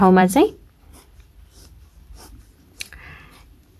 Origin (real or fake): fake